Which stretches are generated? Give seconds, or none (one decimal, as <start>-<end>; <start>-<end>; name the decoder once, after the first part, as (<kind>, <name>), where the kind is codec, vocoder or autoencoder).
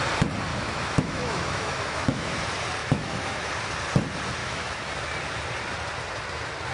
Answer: 0.5-2.4 (autoencoder, DAC-VAE); 2.8-3.5; 4.4-4.9